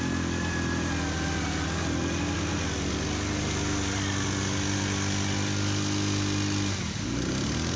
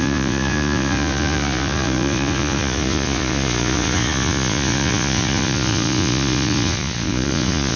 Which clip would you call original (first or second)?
first